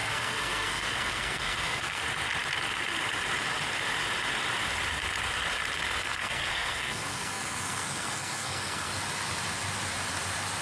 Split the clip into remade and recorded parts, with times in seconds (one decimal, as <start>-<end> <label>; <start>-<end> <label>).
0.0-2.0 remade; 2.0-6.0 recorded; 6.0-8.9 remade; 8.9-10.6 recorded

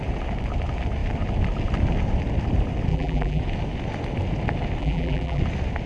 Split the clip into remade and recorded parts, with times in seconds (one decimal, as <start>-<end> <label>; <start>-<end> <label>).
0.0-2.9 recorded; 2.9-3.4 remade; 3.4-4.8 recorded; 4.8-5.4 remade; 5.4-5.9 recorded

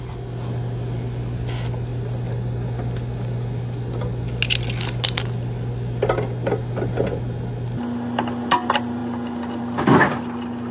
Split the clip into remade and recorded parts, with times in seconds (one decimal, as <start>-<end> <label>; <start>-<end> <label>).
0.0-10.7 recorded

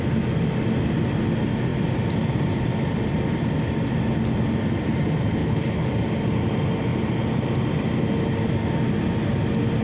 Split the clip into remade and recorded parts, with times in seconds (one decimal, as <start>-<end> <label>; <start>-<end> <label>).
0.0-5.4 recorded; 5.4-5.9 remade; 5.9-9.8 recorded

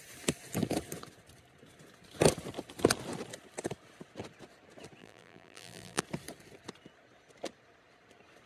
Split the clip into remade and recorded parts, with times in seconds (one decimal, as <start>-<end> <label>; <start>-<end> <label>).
0.0-5.0 recorded; 5.0-6.0 remade; 6.0-8.5 recorded

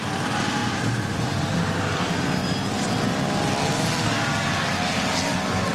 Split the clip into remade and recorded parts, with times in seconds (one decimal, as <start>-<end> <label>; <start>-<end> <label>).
0.0-5.7 recorded

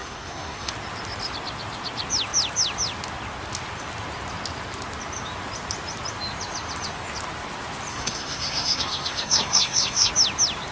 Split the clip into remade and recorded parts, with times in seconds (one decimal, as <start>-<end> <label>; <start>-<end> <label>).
0.0-0.7 remade; 0.7-7.9 recorded; 7.9-10.1 remade; 10.1-10.7 recorded

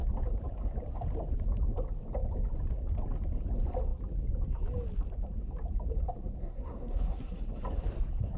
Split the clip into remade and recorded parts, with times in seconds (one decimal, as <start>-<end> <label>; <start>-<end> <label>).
0.0-6.4 recorded; 6.4-7.4 remade; 7.4-8.4 recorded